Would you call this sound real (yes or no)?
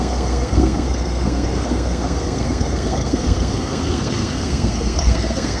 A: no